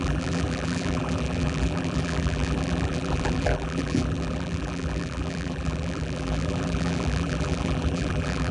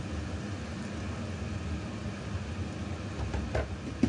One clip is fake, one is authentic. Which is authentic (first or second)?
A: second